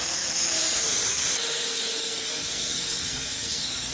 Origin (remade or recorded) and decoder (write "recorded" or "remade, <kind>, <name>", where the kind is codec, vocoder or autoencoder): remade, codec, SNAC